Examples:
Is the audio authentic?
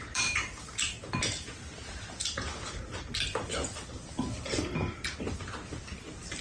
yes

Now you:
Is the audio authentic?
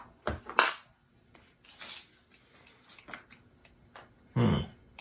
yes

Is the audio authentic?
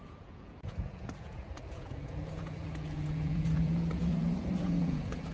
no